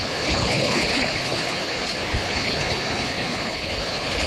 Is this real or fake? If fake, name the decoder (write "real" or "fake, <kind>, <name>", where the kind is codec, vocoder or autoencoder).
fake, codec, HILCodec